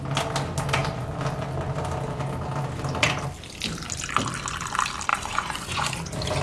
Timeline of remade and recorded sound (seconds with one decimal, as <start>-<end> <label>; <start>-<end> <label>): 0.0-5.1 recorded; 5.1-5.9 remade; 5.9-6.4 recorded